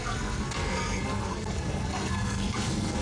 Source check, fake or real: fake